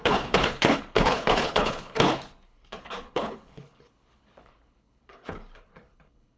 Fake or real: fake